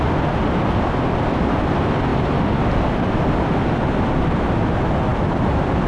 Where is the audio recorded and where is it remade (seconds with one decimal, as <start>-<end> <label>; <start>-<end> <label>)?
0.0-5.9 recorded